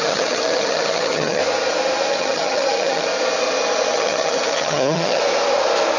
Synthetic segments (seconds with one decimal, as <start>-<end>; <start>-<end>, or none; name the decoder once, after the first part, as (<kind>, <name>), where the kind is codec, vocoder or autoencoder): 0.0-1.4 (vocoder, HiFi-GAN); 2.1-3.1; 3.9-5.2